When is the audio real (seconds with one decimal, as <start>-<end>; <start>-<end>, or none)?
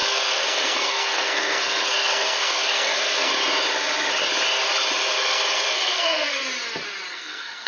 3.3-5.1; 6.4-7.1